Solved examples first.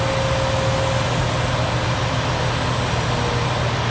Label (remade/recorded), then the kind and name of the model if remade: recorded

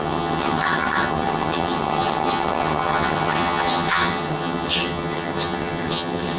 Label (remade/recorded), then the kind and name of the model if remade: remade, vocoder, HiFi-GAN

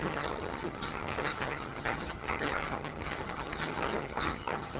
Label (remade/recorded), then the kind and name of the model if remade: remade, vocoder, HiFi-GAN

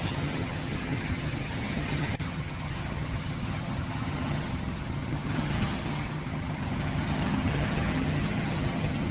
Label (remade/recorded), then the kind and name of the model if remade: remade, vocoder, HiFi-GAN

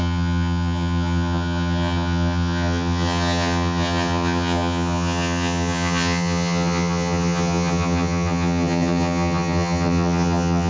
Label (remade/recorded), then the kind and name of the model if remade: remade, vocoder, HiFi-GAN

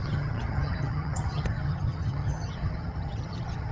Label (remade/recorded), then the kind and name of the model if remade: remade, vocoder, HiFi-GAN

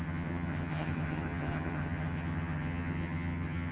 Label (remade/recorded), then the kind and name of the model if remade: remade, vocoder, HiFi-GAN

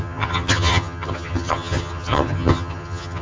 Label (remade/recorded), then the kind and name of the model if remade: remade, vocoder, HiFi-GAN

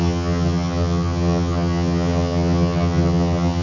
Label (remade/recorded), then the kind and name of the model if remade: remade, vocoder, HiFi-GAN